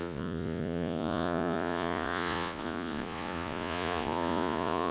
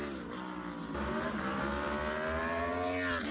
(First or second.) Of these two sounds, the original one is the second